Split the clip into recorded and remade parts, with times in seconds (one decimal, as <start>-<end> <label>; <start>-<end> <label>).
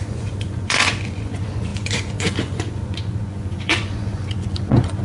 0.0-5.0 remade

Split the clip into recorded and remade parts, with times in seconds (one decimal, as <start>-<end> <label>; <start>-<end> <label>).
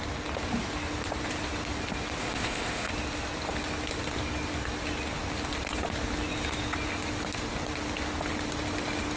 0.0-2.2 recorded; 2.2-2.9 remade; 2.9-9.2 recorded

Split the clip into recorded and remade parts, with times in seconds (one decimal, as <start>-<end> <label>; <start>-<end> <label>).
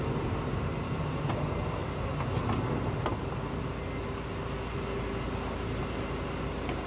0.0-6.9 recorded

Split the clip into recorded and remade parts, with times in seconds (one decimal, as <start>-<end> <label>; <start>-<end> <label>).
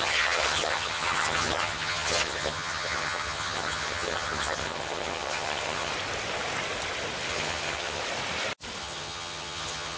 0.0-5.9 remade; 5.9-7.3 recorded; 7.3-8.0 remade; 8.0-8.8 recorded; 8.8-10.0 remade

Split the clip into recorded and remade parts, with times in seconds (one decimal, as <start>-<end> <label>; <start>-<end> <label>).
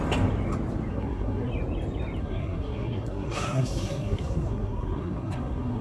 0.0-0.9 recorded; 0.9-1.5 remade; 1.5-2.2 recorded; 2.2-5.8 remade